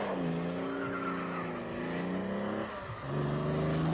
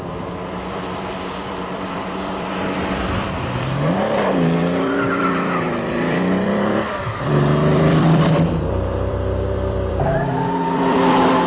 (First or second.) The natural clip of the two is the first